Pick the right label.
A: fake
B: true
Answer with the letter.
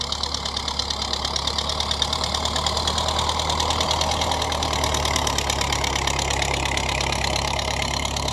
A